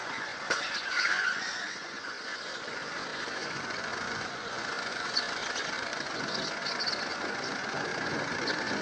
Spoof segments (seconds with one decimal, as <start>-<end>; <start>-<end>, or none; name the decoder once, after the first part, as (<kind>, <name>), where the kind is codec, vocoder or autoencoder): 0.0-8.8 (vocoder, Vocos)